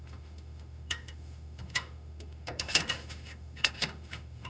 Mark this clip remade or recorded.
remade